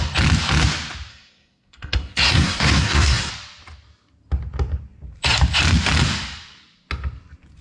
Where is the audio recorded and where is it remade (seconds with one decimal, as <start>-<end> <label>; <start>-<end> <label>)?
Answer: 0.0-1.1 recorded; 1.1-3.3 remade; 3.3-7.6 recorded